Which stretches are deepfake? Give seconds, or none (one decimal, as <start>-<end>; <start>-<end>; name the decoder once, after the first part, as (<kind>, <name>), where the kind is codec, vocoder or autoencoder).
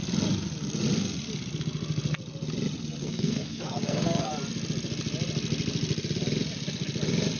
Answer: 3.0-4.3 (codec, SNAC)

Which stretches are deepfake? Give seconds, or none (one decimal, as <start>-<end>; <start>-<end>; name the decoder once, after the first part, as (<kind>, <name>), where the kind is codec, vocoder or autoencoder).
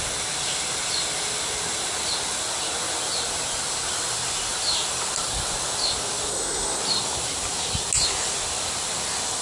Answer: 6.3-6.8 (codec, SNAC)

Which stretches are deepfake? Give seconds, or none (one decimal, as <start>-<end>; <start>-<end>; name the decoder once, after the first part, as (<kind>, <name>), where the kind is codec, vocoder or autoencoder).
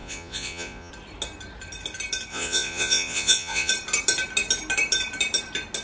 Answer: 0.0-0.9 (vocoder, Vocos); 2.3-3.7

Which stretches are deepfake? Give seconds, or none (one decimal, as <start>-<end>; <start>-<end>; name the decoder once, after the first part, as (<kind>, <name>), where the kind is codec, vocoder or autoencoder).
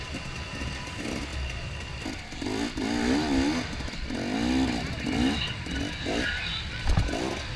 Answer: none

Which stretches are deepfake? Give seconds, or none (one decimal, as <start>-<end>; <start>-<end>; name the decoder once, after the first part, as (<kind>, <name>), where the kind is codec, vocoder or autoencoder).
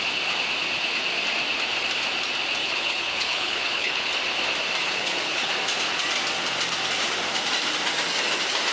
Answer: 2.6-4.1 (codec, HILCodec); 4.8-5.5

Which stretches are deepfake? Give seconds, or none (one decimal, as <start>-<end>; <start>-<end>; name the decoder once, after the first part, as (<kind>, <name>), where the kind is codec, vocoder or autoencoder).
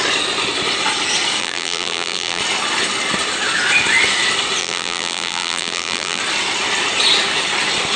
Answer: 1.4-2.4 (vocoder, BigVGAN v2); 4.6-6.2